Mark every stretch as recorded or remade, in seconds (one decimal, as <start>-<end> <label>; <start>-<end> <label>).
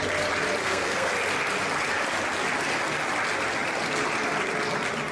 0.0-0.6 recorded; 0.6-1.1 remade; 1.1-5.1 recorded